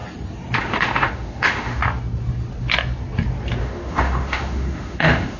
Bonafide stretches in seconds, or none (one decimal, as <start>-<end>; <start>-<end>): 0.0-0.6; 1.8-3.6